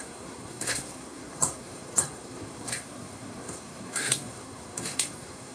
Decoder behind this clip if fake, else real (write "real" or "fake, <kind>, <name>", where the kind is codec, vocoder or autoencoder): fake, codec, SNAC